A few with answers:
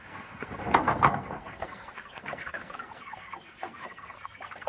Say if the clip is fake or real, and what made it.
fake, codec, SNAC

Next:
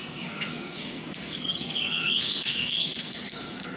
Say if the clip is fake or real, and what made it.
fake, codec, SNAC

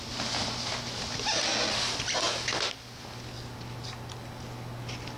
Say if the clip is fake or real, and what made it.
real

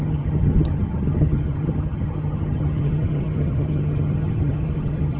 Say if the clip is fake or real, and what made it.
fake, vocoder, HiFi-GAN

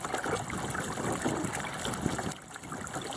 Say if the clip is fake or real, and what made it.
real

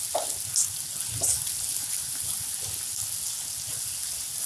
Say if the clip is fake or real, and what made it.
real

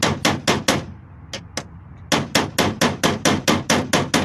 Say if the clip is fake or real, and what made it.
real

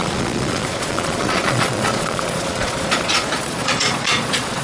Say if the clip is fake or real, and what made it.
fake, vocoder, Vocos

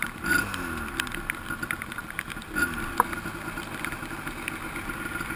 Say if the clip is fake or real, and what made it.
real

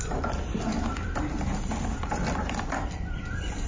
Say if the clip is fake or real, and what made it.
fake, vocoder, BigVGAN v2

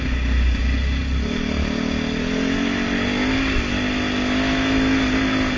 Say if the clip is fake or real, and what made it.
real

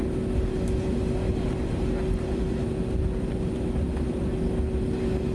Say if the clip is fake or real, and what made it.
real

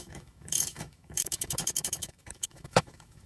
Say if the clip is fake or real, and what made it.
fake, autoencoder, DAC-VAE